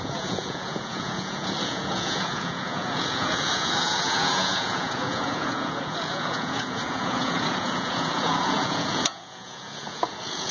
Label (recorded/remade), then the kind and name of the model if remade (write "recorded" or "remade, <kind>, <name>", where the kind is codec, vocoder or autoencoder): remade, vocoder, Vocos